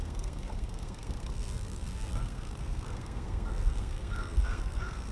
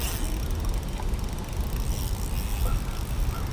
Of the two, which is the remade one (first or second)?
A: first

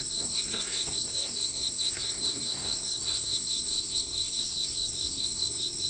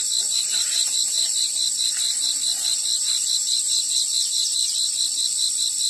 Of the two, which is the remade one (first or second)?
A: first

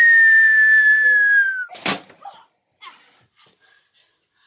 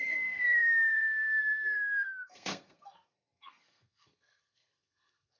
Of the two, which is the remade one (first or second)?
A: second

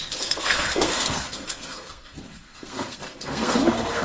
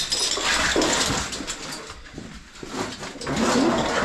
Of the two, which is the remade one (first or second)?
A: first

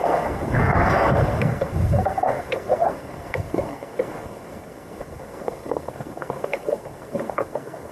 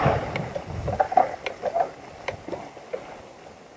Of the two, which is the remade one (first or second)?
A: first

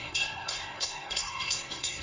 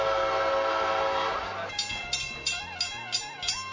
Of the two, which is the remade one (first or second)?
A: first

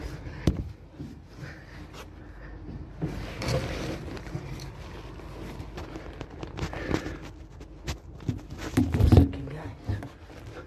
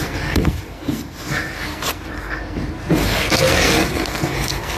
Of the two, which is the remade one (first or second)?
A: second